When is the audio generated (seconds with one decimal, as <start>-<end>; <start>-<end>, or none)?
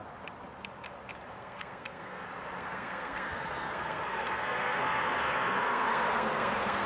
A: 1.4-2.2; 2.6-6.9